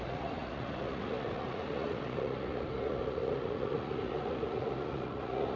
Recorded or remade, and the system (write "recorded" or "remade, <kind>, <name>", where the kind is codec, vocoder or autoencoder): remade, vocoder, Vocos